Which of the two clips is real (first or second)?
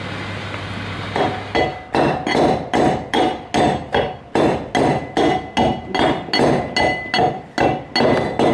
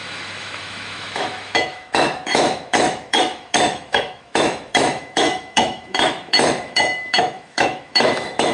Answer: first